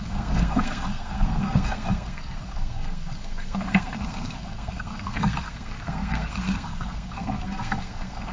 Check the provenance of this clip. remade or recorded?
remade